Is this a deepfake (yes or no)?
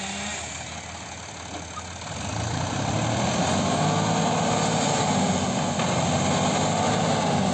no